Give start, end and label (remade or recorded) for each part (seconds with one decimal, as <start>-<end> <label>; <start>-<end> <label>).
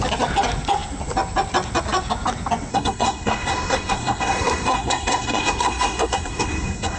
0.0-2.7 recorded; 2.7-7.0 remade